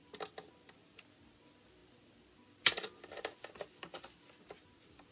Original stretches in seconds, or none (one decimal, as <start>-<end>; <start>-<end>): 0.0-5.1